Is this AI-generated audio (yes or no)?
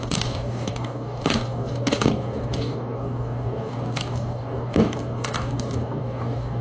yes